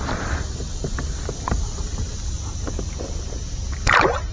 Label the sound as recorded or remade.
recorded